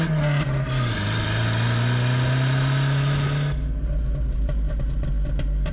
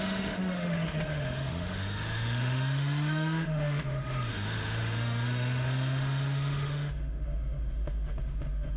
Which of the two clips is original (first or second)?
first